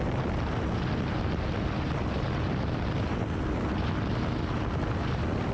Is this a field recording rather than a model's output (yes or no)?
yes